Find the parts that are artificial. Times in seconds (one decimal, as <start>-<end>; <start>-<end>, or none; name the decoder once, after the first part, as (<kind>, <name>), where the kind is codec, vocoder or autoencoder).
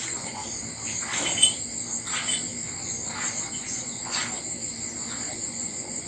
0.0-0.4 (vocoder, Vocos); 3.5-4.2; 5.3-6.1